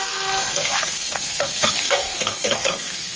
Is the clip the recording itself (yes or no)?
no